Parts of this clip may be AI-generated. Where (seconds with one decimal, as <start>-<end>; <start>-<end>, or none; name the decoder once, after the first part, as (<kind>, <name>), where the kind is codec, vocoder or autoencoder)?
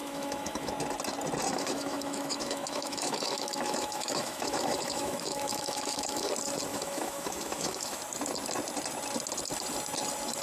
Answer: 0.0-0.7 (autoencoder, DAC-VAE); 1.5-6.3; 6.7-8.0